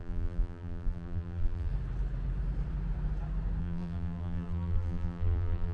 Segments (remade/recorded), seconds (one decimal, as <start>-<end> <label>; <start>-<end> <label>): 0.0-1.7 remade; 1.7-3.6 recorded; 3.6-5.7 remade